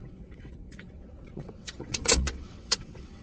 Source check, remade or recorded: remade